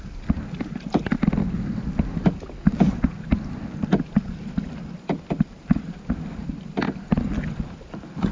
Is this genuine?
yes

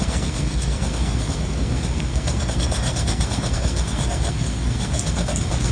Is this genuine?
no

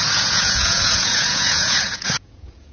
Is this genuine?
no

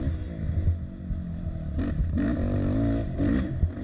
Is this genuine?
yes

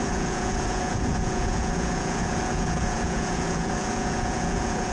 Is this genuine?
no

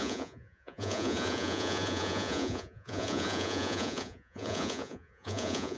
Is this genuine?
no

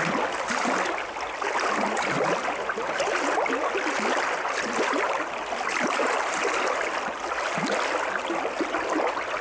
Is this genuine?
yes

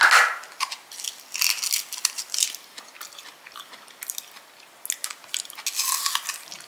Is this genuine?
yes